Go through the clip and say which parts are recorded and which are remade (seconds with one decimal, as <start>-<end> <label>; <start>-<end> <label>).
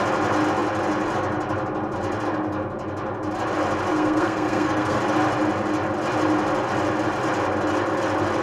0.0-3.9 recorded; 3.9-5.0 remade; 5.0-8.4 recorded